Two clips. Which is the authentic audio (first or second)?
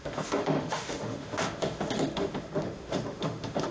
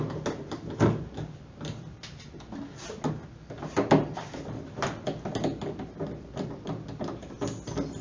second